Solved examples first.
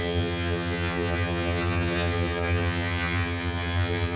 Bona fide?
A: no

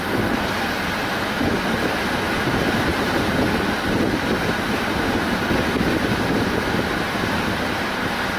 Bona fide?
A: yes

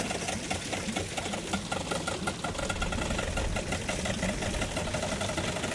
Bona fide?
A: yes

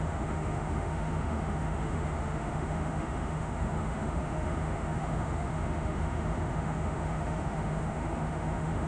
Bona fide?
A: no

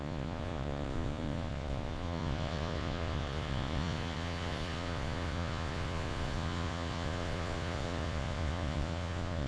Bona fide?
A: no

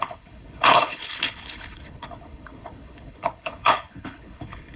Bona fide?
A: no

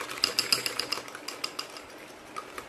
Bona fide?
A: yes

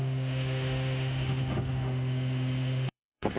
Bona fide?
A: no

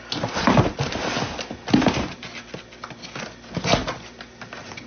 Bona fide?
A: yes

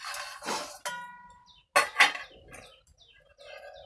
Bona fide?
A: yes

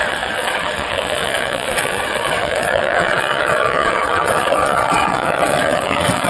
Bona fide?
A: no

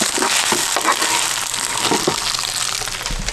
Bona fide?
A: yes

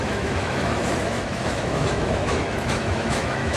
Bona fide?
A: no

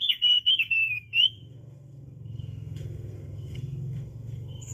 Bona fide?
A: no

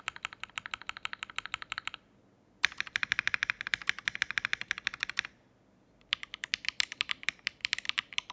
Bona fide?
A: yes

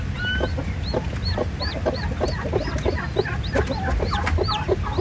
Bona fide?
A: yes